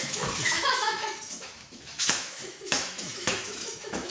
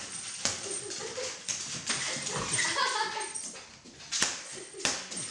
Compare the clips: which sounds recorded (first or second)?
second